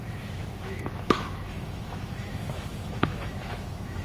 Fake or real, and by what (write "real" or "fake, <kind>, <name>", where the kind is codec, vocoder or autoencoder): fake, autoencoder, DAC-VAE